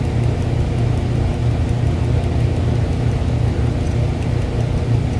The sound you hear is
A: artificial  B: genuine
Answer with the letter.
B